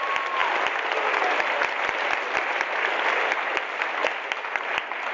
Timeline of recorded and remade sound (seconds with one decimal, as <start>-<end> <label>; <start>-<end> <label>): 0.0-5.1 recorded